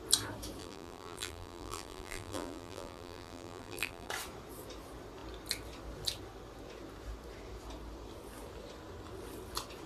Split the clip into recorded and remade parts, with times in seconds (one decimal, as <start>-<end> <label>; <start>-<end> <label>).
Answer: 0.0-0.6 recorded; 0.6-4.1 remade; 4.1-9.9 recorded

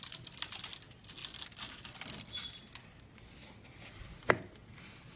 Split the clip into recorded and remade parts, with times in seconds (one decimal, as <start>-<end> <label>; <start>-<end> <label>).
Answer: 0.0-5.2 recorded

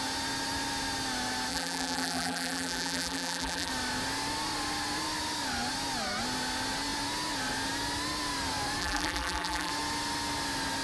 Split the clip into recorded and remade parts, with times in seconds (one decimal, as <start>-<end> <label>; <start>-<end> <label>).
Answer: 0.0-1.5 recorded; 1.5-3.7 remade; 3.7-8.8 recorded; 8.8-9.7 remade; 9.7-10.8 recorded

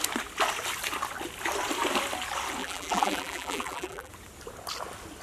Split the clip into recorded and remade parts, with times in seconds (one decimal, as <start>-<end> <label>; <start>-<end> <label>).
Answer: 0.0-2.6 recorded; 2.6-4.1 remade; 4.1-5.2 recorded

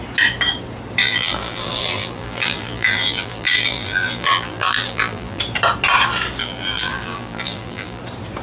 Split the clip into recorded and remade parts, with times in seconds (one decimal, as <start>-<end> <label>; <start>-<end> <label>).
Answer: 0.0-1.0 recorded; 1.0-5.4 remade; 5.4-6.4 recorded; 6.4-8.0 remade; 8.0-8.4 recorded

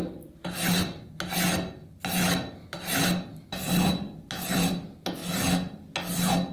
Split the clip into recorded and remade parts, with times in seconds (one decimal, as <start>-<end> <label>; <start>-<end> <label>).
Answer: 0.0-6.5 recorded